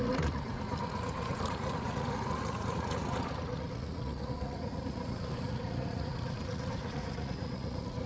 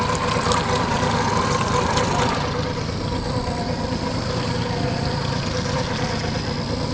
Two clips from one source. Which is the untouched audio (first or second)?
second